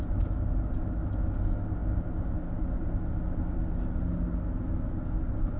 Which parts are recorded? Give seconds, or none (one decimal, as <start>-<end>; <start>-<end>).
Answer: 0.0-5.6